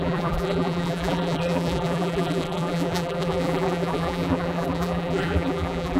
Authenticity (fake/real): fake